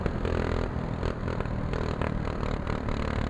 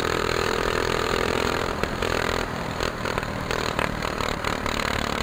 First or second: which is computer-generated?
second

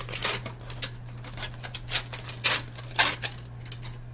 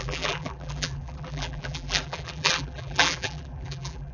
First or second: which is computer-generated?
second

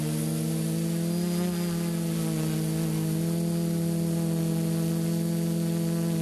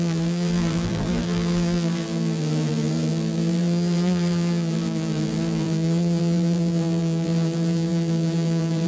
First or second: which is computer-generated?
second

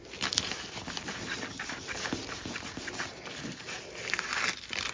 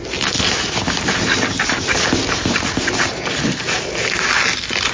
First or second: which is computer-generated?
first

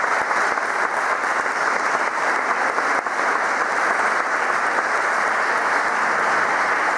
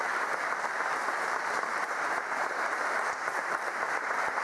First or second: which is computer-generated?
second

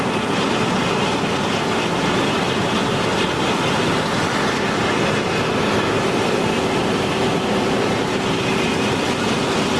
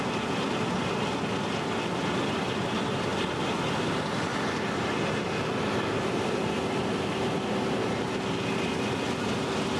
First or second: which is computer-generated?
first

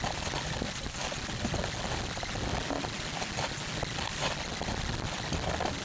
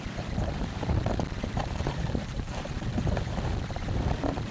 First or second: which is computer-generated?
second